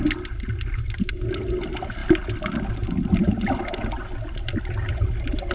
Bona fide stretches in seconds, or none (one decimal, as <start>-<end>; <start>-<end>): 0.0-5.5